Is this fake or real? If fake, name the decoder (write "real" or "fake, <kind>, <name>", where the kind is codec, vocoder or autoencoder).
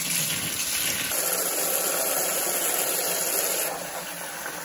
real